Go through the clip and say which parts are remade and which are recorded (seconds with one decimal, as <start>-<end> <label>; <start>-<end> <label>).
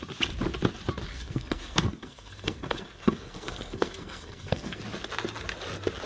0.0-1.1 recorded; 1.1-4.8 remade; 4.8-6.1 recorded